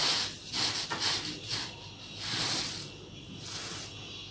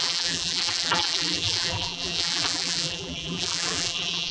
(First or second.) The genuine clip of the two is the first